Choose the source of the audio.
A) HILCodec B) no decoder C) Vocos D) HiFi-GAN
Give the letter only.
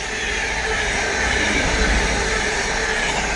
B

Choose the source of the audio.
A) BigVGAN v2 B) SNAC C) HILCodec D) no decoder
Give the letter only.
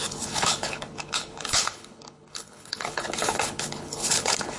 C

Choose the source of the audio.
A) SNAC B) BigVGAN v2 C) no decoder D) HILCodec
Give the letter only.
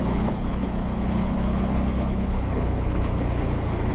D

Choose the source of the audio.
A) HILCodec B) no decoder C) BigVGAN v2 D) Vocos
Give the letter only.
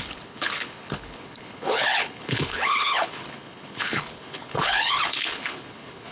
A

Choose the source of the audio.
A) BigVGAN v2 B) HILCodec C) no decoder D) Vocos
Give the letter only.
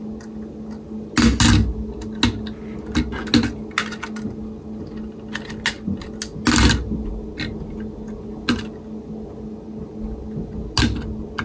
C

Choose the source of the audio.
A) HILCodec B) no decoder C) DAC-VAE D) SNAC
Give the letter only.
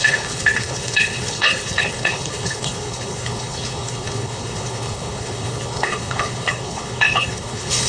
A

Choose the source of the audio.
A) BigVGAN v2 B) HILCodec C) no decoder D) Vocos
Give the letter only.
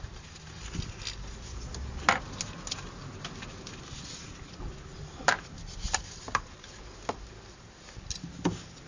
C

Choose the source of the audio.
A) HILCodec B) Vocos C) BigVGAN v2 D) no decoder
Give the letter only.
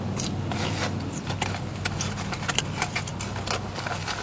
D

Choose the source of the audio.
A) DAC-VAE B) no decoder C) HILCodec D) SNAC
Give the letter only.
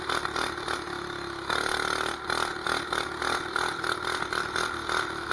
B